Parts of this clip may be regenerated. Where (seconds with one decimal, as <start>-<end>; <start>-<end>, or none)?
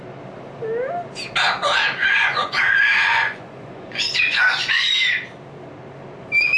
2.0-4.9